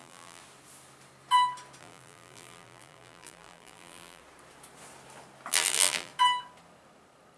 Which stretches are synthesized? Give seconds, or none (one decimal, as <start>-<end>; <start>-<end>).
0.0-0.4; 1.8-4.2; 5.5-6.1